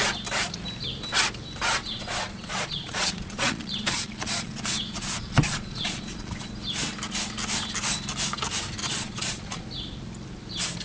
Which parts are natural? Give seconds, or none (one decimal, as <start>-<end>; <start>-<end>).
0.0-1.8; 6.5-8.8; 9.6-10.8